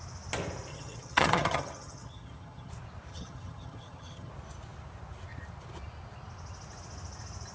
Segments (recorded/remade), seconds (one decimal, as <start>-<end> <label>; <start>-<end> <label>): 0.0-0.7 recorded; 0.7-2.7 remade; 2.7-3.1 recorded; 3.1-4.3 remade; 4.3-7.5 recorded